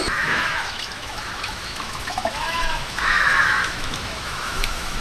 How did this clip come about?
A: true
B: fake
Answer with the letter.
B